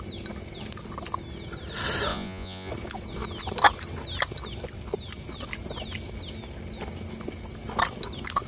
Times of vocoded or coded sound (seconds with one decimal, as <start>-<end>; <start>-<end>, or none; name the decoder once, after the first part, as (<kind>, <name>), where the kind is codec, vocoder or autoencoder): 2.1-2.7 (vocoder, Vocos)